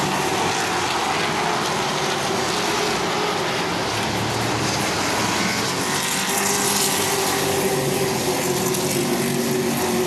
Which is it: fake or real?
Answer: real